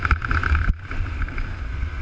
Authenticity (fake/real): real